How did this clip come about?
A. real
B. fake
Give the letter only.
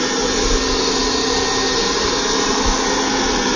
A